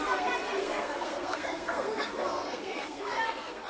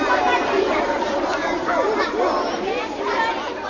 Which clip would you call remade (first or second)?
first